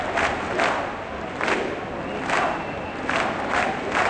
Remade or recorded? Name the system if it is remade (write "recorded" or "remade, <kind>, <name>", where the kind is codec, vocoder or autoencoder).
recorded